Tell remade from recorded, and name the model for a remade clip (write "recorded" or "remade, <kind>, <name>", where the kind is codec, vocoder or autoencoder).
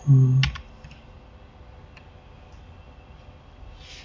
recorded